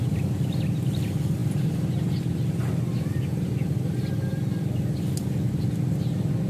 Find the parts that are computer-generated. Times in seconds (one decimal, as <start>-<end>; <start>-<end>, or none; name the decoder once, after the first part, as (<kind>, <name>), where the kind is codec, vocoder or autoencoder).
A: none